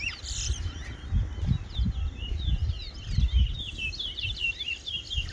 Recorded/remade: remade